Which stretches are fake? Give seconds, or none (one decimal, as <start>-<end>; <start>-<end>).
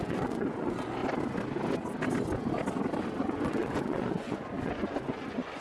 0.0-1.0; 3.0-5.6